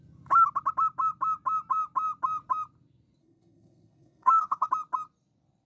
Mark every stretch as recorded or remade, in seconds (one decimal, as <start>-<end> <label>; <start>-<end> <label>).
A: 0.0-3.2 recorded; 3.2-4.7 remade; 4.7-5.7 recorded